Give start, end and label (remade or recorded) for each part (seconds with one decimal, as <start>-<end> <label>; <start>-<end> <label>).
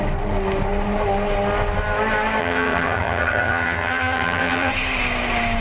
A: 0.0-2.4 recorded; 2.4-4.7 remade; 4.7-5.6 recorded